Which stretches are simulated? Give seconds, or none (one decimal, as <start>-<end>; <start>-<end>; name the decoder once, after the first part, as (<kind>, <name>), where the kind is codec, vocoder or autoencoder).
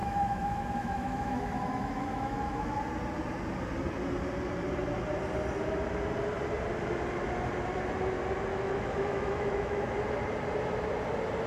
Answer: 0.0-2.8 (autoencoder, DAC-VAE); 8.5-9.9